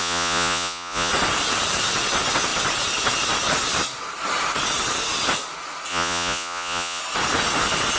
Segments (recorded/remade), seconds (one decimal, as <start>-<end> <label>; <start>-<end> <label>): 0.0-1.1 remade; 1.1-5.9 recorded; 5.9-7.0 remade; 7.0-8.0 recorded